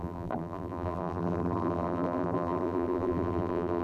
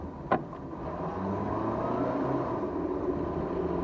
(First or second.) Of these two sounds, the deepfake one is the first